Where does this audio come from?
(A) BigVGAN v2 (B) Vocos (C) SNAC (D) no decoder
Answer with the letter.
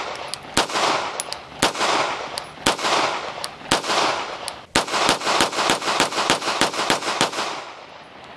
D